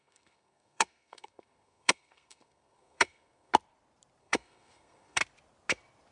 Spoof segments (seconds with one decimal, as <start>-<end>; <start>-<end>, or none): 0.0-3.5; 4.2-5.2